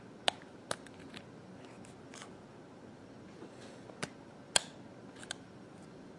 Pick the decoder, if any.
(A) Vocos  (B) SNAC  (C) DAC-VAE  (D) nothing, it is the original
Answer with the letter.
D